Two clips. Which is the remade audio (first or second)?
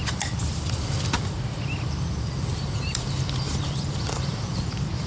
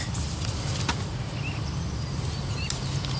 first